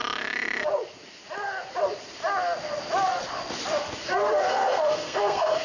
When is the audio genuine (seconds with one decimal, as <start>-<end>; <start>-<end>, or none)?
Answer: 0.0-4.5